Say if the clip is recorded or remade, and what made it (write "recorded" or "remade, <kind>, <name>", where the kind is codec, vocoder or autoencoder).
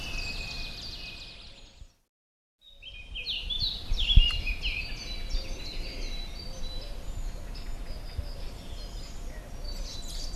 recorded